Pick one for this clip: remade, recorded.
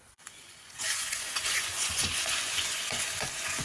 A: remade